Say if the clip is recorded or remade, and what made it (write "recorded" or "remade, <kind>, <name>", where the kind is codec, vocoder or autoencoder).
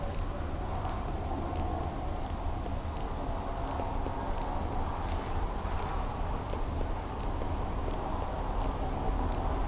recorded